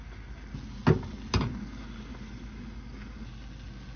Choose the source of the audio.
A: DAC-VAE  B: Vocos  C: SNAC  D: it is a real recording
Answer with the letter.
D